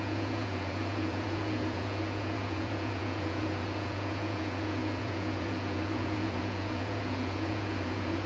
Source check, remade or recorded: remade